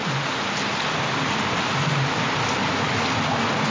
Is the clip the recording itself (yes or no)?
yes